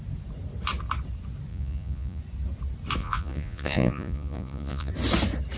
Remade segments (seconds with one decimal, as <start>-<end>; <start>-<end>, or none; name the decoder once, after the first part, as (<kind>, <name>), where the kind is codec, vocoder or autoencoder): 1.5-2.2 (vocoder, Vocos); 3.0-4.9